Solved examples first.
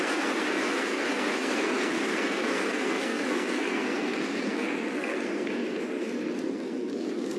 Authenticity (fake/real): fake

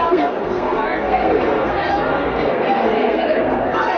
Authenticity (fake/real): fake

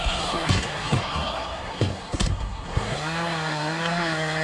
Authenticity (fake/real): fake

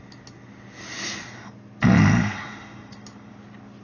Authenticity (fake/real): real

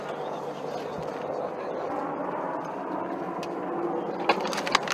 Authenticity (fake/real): real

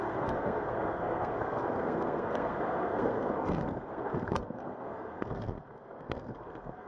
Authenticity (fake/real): fake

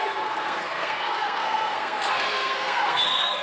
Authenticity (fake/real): fake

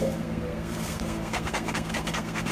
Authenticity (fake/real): fake